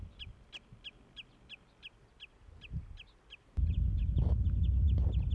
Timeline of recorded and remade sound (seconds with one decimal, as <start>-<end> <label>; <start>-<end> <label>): 0.0-5.3 recorded